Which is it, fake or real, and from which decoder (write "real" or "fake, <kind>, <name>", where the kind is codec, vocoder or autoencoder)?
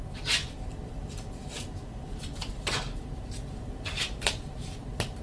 fake, vocoder, BigVGAN v2